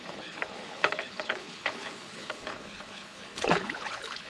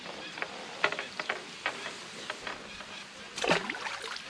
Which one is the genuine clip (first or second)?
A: second